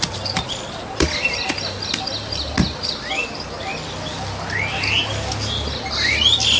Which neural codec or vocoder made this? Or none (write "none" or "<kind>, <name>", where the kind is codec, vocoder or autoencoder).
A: none